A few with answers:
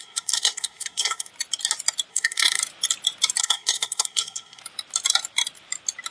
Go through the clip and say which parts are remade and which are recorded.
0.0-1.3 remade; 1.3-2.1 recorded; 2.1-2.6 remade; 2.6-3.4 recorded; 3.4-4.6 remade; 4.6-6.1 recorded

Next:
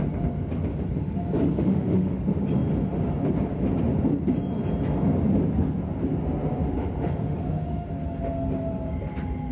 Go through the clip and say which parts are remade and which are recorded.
0.0-1.4 recorded; 1.4-2.2 remade; 2.2-6.8 recorded; 6.8-7.9 remade; 7.9-9.5 recorded

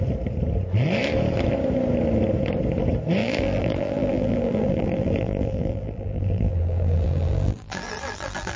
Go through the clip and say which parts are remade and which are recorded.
0.0-3.2 recorded; 3.2-8.6 remade

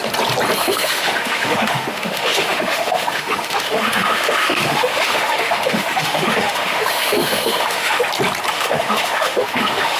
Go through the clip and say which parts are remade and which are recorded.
0.0-0.6 recorded; 0.6-8.0 remade; 8.0-8.5 recorded; 8.5-10.0 remade

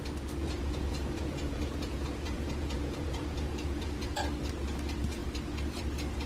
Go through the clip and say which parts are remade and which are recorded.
0.0-0.4 recorded; 0.4-4.2 remade; 4.2-6.3 recorded

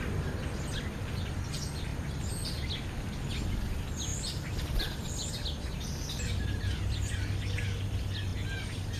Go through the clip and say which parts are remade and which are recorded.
0.0-4.1 recorded; 4.1-5.3 remade; 5.3-9.0 recorded

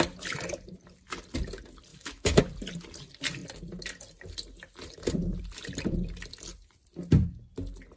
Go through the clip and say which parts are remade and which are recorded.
0.0-1.9 recorded; 1.9-2.4 remade; 2.4-8.0 recorded